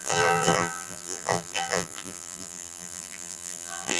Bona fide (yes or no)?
no